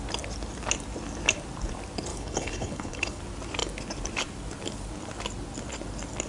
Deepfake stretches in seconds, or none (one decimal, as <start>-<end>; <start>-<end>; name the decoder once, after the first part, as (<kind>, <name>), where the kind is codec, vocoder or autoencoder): 2.1-3.2 (codec, HILCodec)